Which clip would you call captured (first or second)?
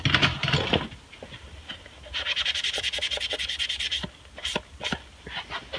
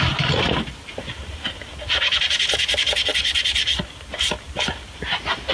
first